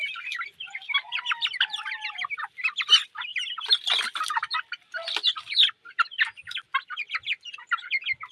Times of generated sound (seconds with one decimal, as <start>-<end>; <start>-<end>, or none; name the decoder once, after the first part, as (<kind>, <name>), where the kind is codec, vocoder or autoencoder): none